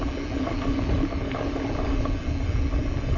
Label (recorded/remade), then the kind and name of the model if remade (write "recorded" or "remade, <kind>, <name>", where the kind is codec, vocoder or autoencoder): recorded